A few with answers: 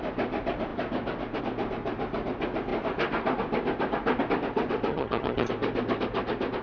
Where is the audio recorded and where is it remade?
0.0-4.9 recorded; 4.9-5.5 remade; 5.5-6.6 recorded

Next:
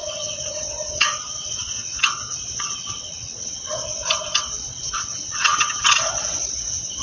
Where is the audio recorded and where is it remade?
0.0-7.0 remade

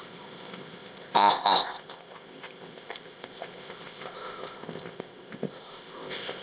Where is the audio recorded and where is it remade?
0.0-6.4 remade

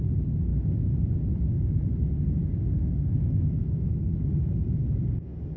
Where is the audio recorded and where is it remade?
0.0-2.8 recorded; 2.8-4.2 remade; 4.2-5.6 recorded

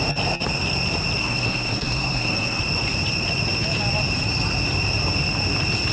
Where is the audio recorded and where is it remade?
0.0-1.2 recorded; 1.2-2.6 remade; 2.6-5.9 recorded

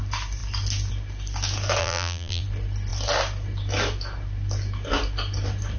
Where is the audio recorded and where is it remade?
0.0-1.8 recorded; 1.8-2.4 remade; 2.4-5.8 recorded

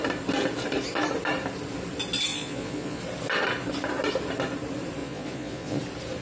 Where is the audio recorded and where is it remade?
0.0-2.3 recorded; 2.3-3.0 remade; 3.0-5.0 recorded; 5.0-5.8 remade; 5.8-6.2 recorded

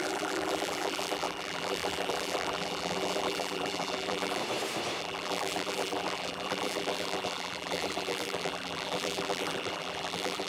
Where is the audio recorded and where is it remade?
0.0-4.4 remade; 4.4-5.0 recorded; 5.0-10.5 remade